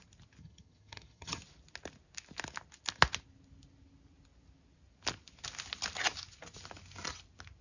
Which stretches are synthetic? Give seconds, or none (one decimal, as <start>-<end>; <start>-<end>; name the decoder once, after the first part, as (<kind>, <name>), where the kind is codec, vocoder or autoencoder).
0.4-1.4 (vocoder, HiFi-GAN)